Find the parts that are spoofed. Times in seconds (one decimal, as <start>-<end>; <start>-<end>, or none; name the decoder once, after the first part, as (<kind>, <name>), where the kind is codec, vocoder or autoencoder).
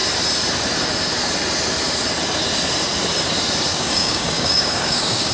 3.7-5.3 (codec, DAC)